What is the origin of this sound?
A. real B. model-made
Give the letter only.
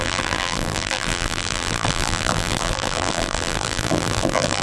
B